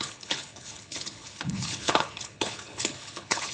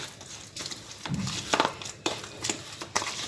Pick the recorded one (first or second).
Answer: second